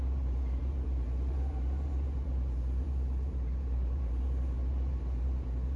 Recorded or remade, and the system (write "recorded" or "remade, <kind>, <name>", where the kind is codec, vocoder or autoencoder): remade, vocoder, BigVGAN v2